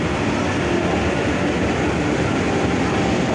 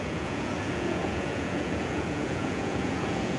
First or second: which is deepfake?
second